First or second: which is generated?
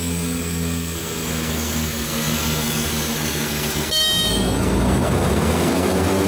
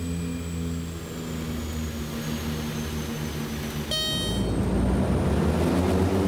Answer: first